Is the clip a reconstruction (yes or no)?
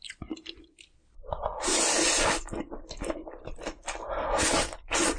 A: no